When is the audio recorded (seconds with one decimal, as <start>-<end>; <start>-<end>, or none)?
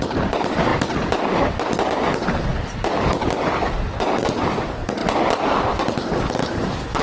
0.7-1.4; 5.0-5.8